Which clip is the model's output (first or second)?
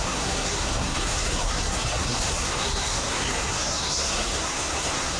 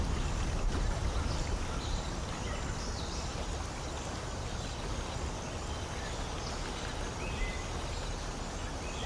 first